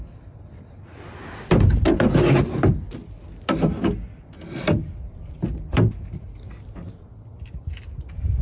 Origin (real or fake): real